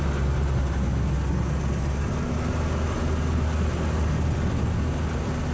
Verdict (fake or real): real